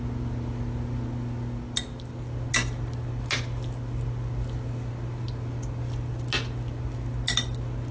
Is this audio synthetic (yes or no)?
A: no